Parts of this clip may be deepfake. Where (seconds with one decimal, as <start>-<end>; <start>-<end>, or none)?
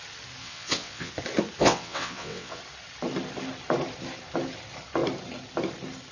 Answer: 0.4-1.1; 1.6-2.6